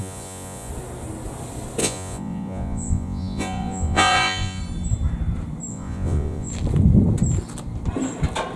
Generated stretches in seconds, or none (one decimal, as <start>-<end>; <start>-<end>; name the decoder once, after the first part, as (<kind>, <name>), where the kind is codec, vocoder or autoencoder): 0.0-0.7 (vocoder, Vocos); 1.8-4.6; 5.7-6.5